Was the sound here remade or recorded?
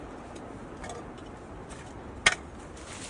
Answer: recorded